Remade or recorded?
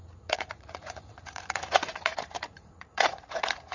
remade